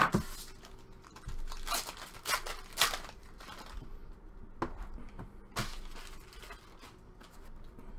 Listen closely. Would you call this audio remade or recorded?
recorded